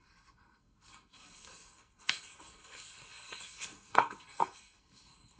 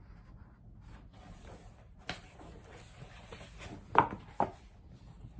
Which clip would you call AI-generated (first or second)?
first